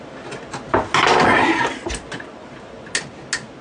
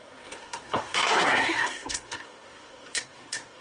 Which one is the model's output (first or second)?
second